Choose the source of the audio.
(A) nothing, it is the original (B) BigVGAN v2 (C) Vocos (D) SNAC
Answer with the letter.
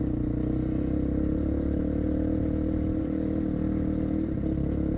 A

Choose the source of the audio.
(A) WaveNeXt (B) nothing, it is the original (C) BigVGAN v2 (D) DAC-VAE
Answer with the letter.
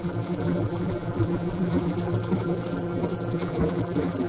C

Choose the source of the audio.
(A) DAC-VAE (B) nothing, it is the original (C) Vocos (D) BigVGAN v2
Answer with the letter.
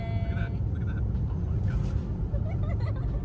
B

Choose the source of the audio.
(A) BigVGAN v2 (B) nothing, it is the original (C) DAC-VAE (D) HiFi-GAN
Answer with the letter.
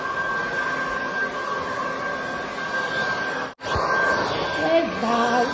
B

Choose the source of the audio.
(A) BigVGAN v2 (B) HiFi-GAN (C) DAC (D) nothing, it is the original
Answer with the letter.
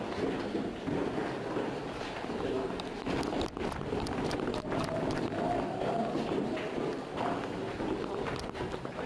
D